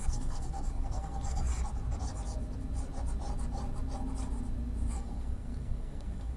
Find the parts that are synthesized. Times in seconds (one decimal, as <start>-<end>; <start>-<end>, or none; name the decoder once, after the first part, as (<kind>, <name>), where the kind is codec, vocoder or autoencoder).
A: 0.0-1.5 (codec, SNAC); 4.9-6.4

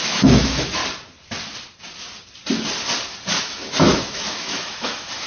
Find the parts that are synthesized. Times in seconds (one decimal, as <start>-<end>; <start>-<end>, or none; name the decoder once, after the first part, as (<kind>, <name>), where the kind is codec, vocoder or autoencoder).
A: 0.0-0.8 (autoencoder, DAC-VAE); 3.4-5.3

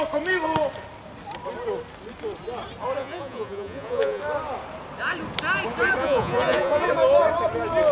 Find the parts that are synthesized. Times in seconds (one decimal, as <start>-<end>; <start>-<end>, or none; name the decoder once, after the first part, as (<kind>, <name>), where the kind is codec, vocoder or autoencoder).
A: 3.0-4.2 (vocoder, Vocos); 6.0-6.9

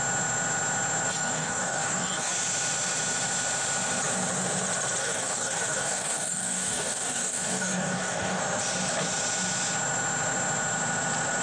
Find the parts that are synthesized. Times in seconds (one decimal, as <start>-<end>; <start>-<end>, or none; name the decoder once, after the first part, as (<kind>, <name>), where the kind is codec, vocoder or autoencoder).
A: 1.1-2.3 (codec, DAC); 5.0-8.4

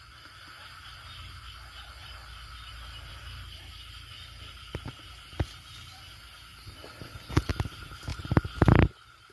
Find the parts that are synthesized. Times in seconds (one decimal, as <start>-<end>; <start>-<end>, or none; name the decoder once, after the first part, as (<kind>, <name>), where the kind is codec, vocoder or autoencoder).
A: 2.0-4.7 (vocoder, BigVGAN v2)

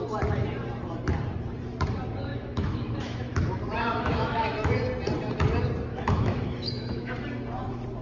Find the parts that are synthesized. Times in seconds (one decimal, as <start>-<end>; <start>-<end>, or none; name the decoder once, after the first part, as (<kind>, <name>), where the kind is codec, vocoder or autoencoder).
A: 2.3-4.7 (autoencoder, DAC-VAE); 5.9-7.1